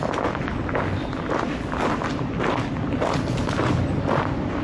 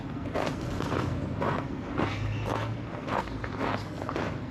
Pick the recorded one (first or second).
first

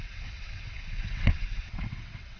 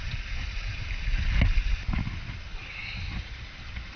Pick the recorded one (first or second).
second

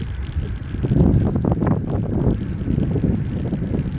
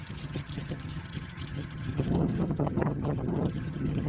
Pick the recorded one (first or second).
first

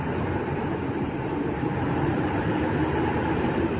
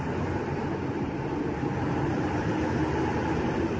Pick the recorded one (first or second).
second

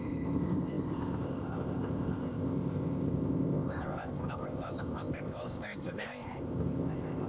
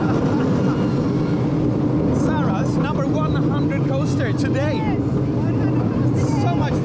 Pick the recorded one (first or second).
second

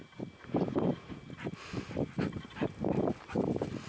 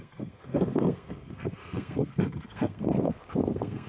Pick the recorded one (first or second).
first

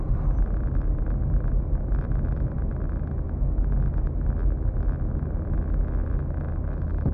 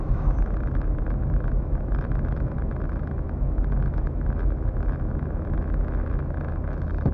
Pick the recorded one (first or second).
first